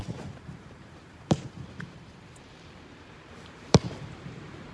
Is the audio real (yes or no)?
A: no